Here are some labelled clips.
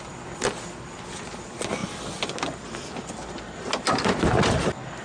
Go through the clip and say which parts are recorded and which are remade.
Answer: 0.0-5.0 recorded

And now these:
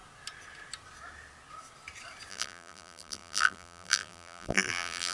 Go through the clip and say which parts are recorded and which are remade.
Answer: 0.0-2.3 recorded; 2.3-5.1 remade

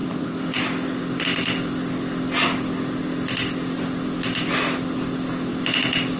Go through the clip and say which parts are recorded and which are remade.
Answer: 0.0-0.6 remade; 0.6-6.2 recorded